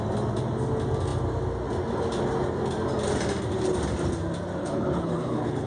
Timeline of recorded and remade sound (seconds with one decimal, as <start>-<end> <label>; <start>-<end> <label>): 0.0-4.6 recorded; 4.6-5.7 remade